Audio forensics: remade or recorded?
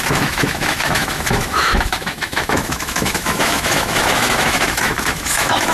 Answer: remade